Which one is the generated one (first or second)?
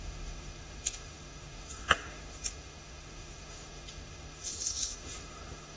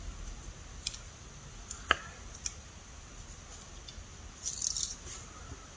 first